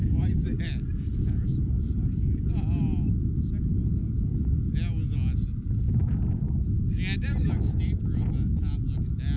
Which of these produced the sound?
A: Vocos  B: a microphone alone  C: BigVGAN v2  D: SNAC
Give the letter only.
B